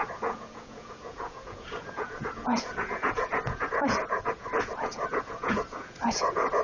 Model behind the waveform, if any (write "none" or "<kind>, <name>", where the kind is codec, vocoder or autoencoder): vocoder, Vocos